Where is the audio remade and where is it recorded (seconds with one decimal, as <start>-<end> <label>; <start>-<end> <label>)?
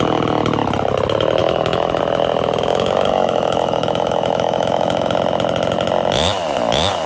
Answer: 0.0-1.4 recorded; 1.4-2.0 remade; 2.0-2.7 recorded; 2.7-5.2 remade; 5.2-7.1 recorded